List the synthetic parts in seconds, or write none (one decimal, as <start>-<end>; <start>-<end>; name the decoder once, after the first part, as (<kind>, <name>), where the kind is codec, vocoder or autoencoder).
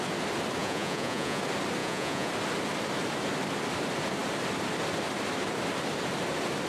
0.6-1.4 (vocoder, Vocos); 1.8-2.3